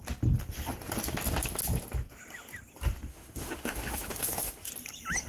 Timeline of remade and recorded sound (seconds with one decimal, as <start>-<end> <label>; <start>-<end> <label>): 0.0-3.1 recorded; 3.1-4.7 remade; 4.7-5.3 recorded

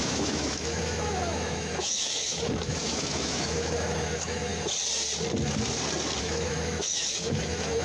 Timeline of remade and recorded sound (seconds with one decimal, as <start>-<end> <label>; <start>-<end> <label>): 0.0-4.5 remade; 4.5-6.2 recorded; 6.2-7.8 remade

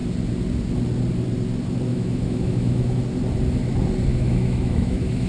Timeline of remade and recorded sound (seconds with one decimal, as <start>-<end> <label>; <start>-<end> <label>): 0.0-1.9 recorded; 1.9-3.0 remade; 3.0-4.1 recorded; 4.1-5.3 remade

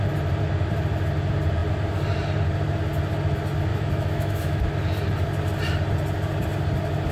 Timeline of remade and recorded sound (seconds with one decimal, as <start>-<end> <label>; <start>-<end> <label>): 0.0-3.7 recorded; 3.7-4.6 remade; 4.6-7.1 recorded

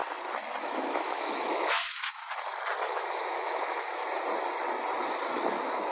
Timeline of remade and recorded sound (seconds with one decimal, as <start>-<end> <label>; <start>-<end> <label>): 0.0-0.6 recorded; 0.6-2.2 remade; 2.2-2.8 recorded; 2.8-4.0 remade; 4.0-5.5 recorded; 5.5-5.9 remade

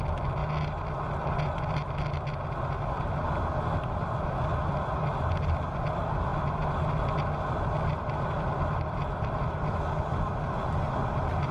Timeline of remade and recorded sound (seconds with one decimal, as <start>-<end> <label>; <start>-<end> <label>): 0.0-11.5 recorded

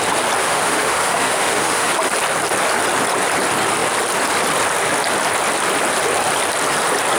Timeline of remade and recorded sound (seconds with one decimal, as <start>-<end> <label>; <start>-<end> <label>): 0.0-0.4 recorded; 0.4-1.9 remade; 1.9-7.2 recorded